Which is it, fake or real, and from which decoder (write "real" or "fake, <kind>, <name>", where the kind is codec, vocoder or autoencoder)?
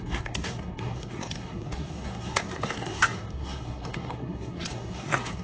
fake, codec, SNAC